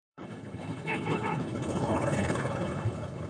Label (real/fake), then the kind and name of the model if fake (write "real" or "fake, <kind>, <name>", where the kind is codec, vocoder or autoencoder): fake, codec, HILCodec